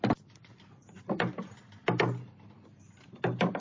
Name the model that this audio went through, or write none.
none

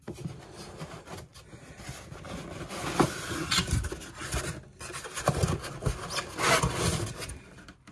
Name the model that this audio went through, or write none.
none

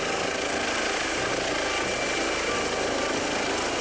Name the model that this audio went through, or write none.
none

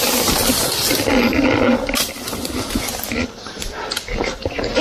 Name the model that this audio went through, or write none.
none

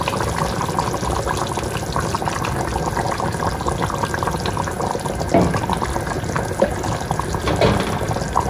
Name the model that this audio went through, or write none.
none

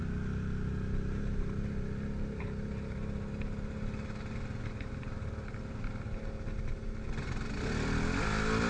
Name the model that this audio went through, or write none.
none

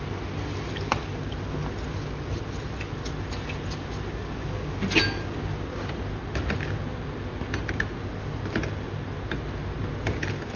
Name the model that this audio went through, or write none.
none